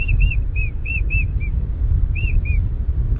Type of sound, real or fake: real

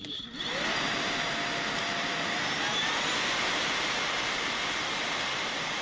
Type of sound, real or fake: fake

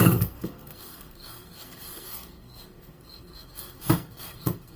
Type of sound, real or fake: fake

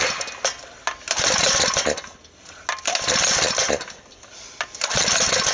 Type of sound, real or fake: real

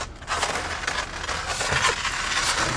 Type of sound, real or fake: real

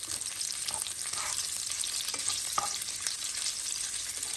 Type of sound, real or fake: real